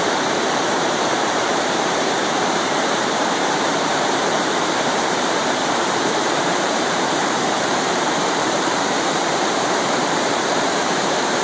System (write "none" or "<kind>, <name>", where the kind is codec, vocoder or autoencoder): vocoder, BigVGAN v2